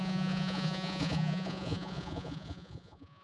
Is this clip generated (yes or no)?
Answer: yes